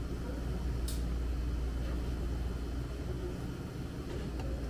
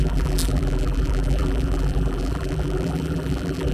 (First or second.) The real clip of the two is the first